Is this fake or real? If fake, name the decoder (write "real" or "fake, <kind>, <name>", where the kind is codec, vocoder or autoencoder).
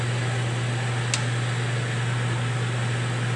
real